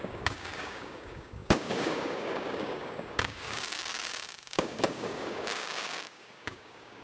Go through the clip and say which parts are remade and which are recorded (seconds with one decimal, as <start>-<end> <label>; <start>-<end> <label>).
0.0-7.0 remade